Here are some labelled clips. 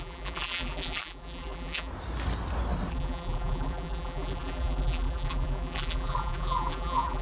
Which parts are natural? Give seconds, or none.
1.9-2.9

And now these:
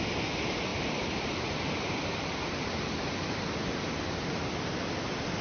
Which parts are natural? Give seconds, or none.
0.0-0.7; 3.5-5.4